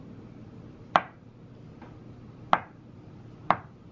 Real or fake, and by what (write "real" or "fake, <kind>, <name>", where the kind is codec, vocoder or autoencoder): real